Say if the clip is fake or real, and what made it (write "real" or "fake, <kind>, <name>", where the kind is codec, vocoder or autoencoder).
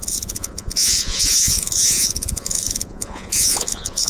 fake, vocoder, Vocos